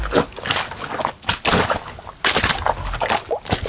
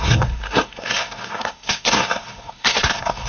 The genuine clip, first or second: first